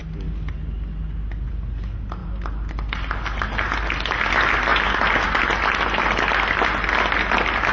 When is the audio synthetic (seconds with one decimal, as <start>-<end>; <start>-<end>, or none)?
none